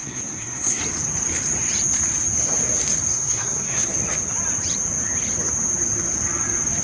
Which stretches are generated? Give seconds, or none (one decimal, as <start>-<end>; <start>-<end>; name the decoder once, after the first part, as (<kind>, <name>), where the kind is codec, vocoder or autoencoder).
0.0-0.8 (codec, SNAC); 3.1-3.9